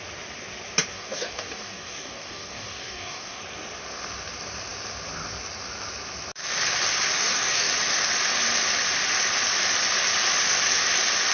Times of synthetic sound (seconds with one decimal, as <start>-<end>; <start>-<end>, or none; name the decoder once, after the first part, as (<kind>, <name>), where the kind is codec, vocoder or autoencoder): 0.9-3.4 (codec, DAC); 7.2-7.7